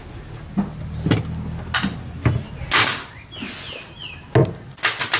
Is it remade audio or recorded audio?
recorded